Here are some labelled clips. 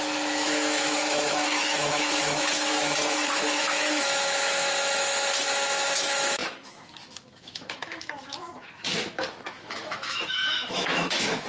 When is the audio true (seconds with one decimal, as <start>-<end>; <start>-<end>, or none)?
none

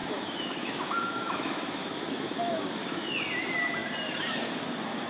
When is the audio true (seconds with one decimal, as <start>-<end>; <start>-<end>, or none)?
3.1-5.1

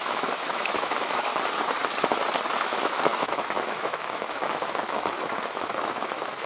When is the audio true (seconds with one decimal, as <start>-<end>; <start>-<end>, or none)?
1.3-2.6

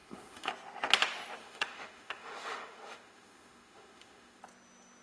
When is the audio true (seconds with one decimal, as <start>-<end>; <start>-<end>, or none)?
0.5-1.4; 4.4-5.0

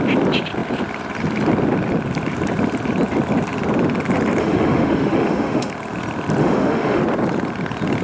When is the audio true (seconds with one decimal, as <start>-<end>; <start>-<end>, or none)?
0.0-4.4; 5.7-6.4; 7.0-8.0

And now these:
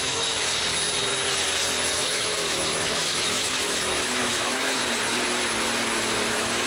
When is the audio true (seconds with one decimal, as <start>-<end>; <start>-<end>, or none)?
0.4-1.9; 4.8-6.3